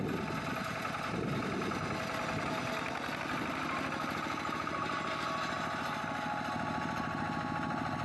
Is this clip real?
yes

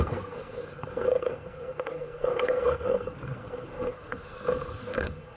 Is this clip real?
no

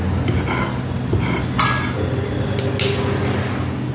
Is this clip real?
yes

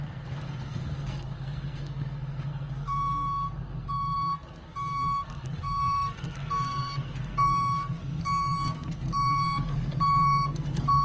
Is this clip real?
no